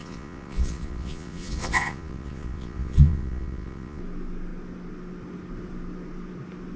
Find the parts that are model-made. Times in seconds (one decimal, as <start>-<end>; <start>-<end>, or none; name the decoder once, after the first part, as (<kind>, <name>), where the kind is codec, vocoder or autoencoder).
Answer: 0.0-4.0 (vocoder, Vocos)

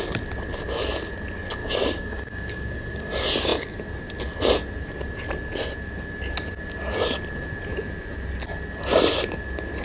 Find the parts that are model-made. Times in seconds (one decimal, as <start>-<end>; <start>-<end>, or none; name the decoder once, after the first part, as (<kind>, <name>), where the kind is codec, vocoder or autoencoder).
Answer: 1.6-3.1 (codec, DAC)

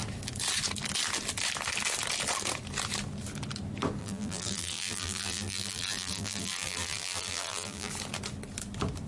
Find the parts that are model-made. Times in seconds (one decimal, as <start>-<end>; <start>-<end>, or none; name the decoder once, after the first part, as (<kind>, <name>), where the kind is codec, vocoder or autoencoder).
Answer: 4.0-7.9 (vocoder, BigVGAN v2)

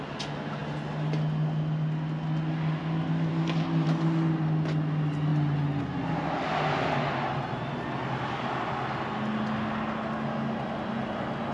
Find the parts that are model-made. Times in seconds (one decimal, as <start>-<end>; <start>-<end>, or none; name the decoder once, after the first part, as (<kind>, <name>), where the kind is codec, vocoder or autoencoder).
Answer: none

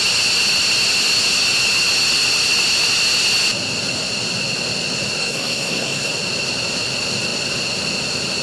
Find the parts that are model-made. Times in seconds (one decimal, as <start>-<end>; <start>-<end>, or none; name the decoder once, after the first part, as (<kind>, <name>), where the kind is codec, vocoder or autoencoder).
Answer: 5.2-6.1 (codec, SNAC)

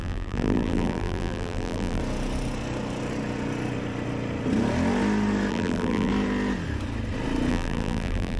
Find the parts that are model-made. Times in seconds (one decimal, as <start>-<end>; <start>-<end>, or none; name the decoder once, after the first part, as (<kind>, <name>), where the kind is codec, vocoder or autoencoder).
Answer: 0.0-2.0 (vocoder, BigVGAN v2); 5.5-6.1; 7.5-8.4

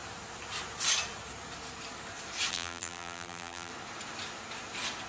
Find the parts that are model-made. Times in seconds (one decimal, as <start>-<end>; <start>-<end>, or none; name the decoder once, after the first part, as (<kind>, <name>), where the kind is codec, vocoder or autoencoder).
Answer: 2.5-3.7 (vocoder, BigVGAN v2)